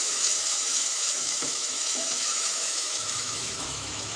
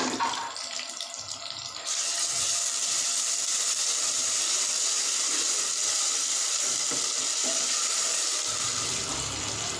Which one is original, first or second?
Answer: second